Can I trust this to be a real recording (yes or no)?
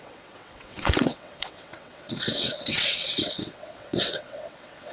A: no